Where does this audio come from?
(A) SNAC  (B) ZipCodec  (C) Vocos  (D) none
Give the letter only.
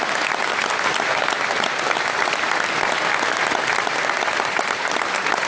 D